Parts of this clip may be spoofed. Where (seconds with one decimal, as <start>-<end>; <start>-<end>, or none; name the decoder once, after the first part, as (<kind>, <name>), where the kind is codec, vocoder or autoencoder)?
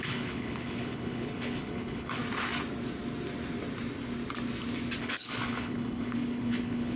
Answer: 0.0-2.2 (codec, HILCodec); 5.0-7.0